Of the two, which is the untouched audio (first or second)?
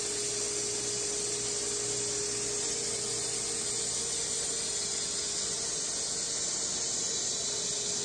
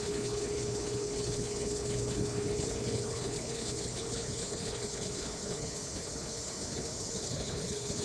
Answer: first